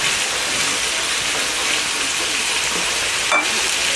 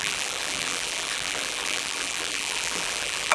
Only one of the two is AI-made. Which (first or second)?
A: second